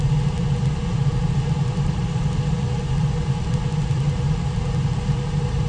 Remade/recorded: recorded